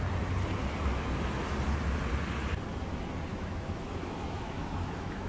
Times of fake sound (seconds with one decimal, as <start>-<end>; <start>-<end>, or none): 3.3-5.3